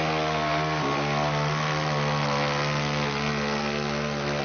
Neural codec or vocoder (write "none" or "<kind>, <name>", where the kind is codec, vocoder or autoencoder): none